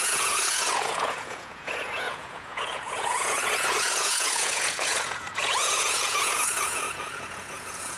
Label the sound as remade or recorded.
remade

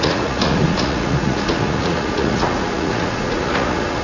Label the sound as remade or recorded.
remade